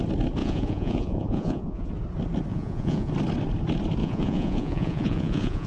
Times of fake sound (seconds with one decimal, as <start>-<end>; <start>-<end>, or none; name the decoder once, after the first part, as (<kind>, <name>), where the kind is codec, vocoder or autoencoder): 0.4-1.9 (vocoder, Vocos); 2.5-3.1; 4.0-5.7